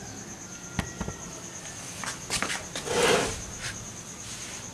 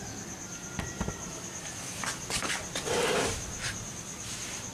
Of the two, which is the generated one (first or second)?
second